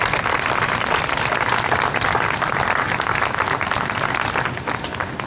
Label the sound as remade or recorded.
recorded